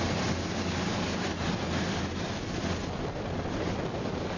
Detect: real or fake real